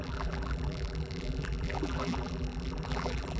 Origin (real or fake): fake